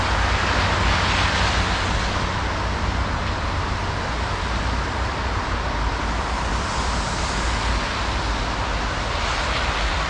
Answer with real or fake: real